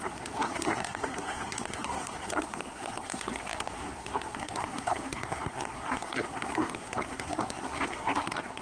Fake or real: fake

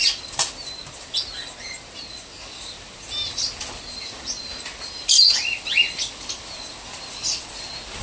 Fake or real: real